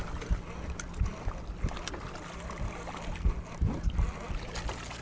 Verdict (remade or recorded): recorded